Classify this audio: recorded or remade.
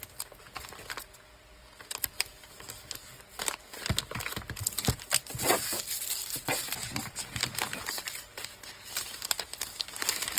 recorded